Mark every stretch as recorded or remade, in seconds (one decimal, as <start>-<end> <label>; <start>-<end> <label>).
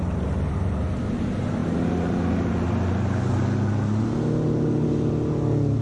0.0-5.8 recorded